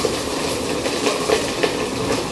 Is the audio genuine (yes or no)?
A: yes